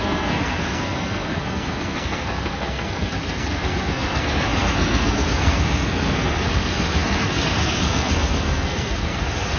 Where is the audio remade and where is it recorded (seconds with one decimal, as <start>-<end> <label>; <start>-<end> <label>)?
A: 0.0-9.6 remade